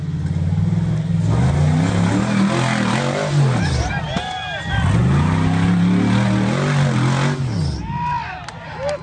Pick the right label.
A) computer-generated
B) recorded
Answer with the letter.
B